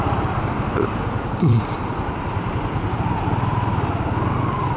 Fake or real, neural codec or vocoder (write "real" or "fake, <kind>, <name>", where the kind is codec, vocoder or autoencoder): fake, vocoder, BigVGAN v2